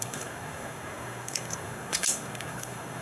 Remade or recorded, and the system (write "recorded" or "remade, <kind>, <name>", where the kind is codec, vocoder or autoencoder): remade, codec, SNAC